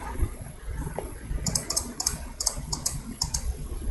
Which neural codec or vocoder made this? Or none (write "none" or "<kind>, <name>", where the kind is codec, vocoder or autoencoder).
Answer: vocoder, Vocos